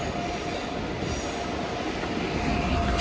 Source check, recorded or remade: recorded